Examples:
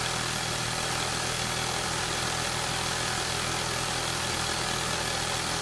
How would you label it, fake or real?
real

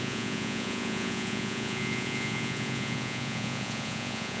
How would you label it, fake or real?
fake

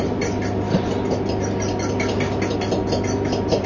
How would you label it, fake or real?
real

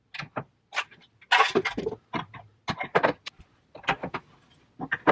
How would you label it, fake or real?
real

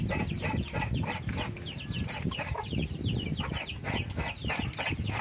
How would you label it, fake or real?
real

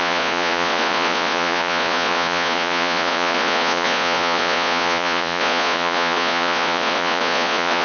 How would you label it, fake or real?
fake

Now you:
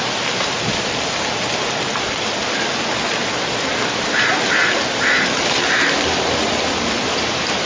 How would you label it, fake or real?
real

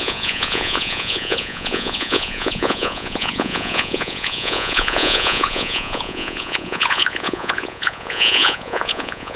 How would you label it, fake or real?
fake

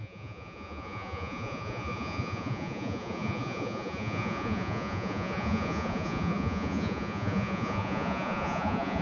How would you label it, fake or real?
fake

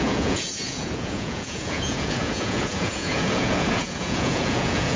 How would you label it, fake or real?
fake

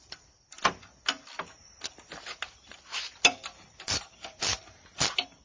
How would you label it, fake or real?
real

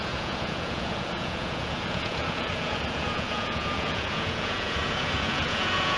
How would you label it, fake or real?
fake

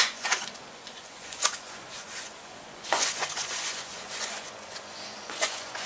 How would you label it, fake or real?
fake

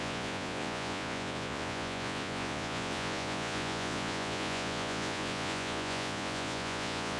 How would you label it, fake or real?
fake